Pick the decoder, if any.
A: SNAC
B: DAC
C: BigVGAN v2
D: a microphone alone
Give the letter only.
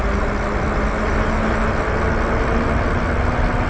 D